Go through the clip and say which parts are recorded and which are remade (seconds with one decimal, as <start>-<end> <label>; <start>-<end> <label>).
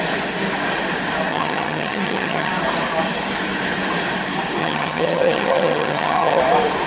0.0-1.3 recorded; 1.3-2.5 remade; 2.5-4.6 recorded; 4.6-6.4 remade; 6.4-6.9 recorded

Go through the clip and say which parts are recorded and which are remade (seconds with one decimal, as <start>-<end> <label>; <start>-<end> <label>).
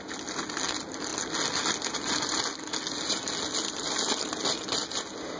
0.0-5.4 recorded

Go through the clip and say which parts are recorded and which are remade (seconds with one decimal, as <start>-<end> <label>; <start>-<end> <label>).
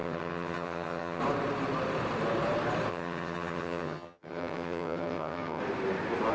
0.0-1.2 remade; 1.2-2.9 recorded; 2.9-5.6 remade; 5.6-6.3 recorded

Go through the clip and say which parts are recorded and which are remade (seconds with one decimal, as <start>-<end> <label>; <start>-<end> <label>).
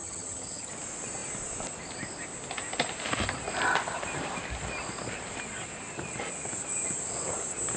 0.0-0.7 remade; 0.7-7.8 recorded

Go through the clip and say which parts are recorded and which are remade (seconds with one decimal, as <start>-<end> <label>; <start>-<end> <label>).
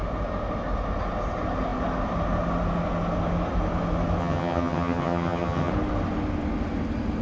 0.0-4.2 recorded; 4.2-5.7 remade; 5.7-7.2 recorded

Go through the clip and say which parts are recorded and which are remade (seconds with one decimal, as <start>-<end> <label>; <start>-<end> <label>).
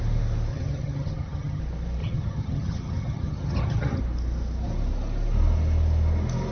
0.0-0.5 recorded; 0.5-1.6 remade; 1.6-2.0 recorded; 2.0-4.0 remade; 4.0-6.5 recorded